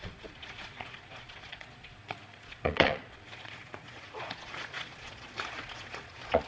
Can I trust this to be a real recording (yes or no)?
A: no